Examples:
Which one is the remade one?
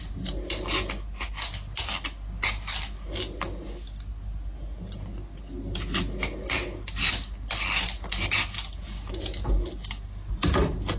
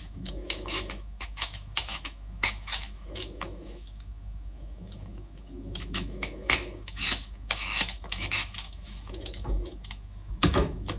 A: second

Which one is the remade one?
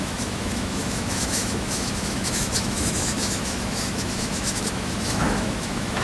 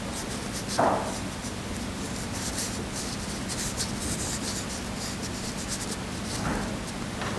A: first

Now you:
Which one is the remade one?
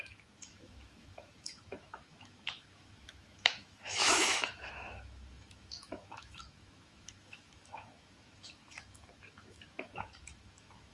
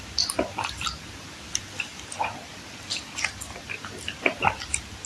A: first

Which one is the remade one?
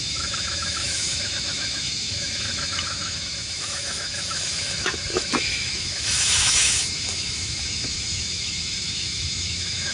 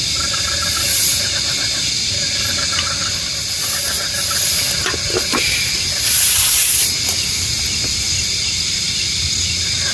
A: first